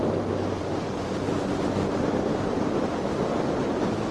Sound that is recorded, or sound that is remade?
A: recorded